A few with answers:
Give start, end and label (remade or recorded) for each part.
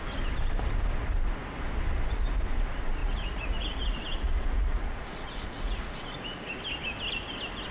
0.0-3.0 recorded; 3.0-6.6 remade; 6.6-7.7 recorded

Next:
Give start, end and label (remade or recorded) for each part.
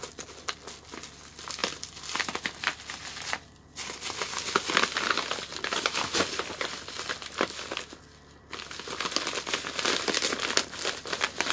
0.0-11.5 recorded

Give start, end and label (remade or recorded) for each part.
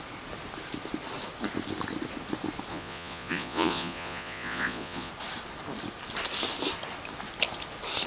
0.0-2.7 recorded; 2.7-5.1 remade; 5.1-8.1 recorded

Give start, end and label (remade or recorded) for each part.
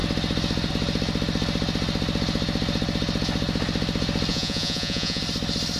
0.0-4.3 recorded; 4.3-5.2 remade; 5.2-5.8 recorded